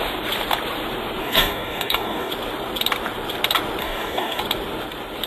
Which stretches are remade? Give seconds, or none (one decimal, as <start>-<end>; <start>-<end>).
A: 1.2-2.3; 3.8-4.4